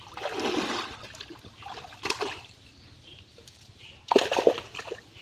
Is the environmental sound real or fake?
real